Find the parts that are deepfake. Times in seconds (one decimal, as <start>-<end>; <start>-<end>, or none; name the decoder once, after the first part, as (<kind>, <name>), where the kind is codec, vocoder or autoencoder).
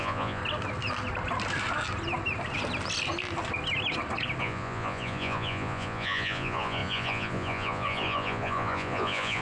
0.0-0.4 (vocoder, Vocos); 4.4-9.4